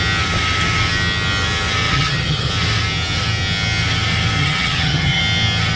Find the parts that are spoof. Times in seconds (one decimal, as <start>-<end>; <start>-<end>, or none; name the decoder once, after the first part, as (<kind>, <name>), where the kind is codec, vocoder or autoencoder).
1.9-2.5 (vocoder, HiFi-GAN); 4.4-5.2